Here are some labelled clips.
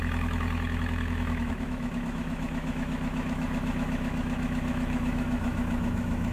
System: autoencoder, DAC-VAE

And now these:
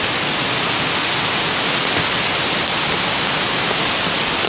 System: none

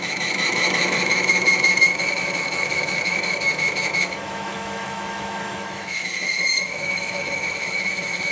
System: autoencoder, DAC-VAE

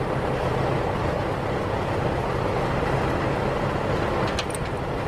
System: none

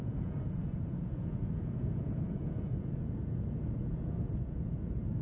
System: vocoder, Vocos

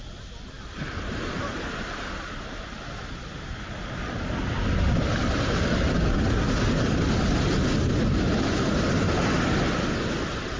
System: none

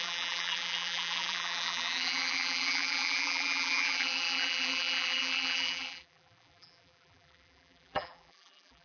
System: vocoder, BigVGAN v2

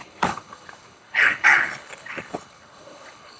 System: codec, HILCodec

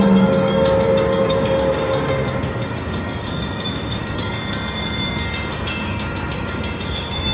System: codec, DAC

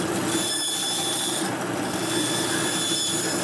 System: none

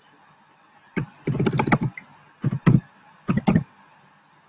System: none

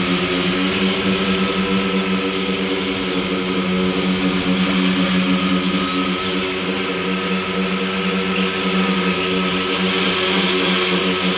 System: none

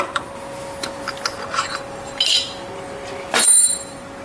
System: none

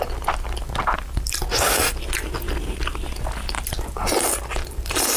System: none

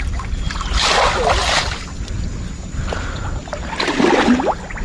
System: none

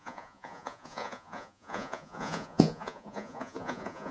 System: vocoder, Vocos